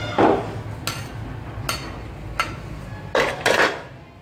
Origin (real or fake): real